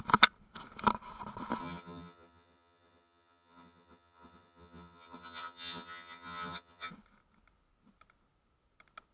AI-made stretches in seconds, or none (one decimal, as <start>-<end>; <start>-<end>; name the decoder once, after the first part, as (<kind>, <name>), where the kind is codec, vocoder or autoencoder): 1.6-6.9 (vocoder, HiFi-GAN)

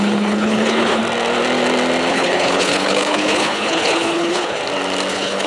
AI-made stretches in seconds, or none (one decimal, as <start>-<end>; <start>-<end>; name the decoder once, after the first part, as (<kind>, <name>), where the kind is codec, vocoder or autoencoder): 0.0-1.0 (codec, HILCodec); 2.1-4.6; 5.1-5.5